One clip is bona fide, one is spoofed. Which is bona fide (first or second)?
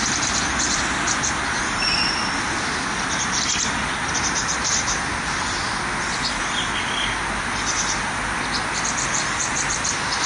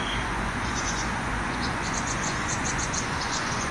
first